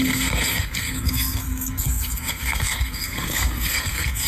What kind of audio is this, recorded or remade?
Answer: remade